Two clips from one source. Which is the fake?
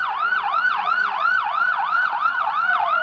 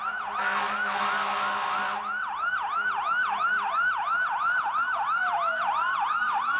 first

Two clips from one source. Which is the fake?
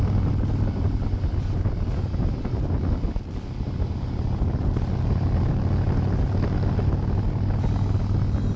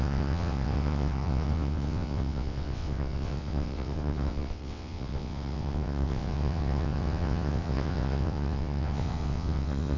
second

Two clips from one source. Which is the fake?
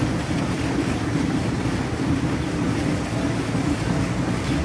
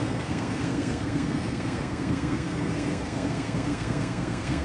second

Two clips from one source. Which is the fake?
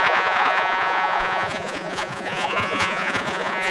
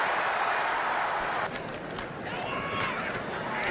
first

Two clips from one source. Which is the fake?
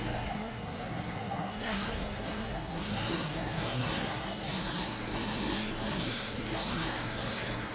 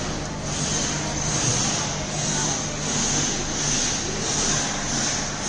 first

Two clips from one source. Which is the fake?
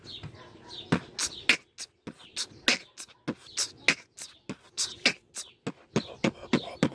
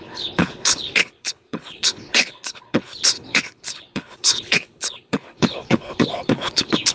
second